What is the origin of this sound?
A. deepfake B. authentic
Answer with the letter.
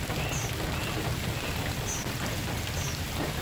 B